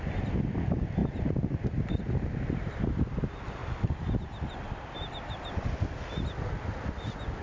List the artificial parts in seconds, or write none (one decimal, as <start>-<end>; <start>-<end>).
1.0-2.0; 3.6-4.1